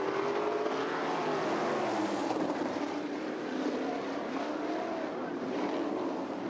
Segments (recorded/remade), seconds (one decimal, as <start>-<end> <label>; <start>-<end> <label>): 0.0-2.2 recorded; 2.2-4.4 remade; 4.4-5.3 recorded; 5.3-6.5 remade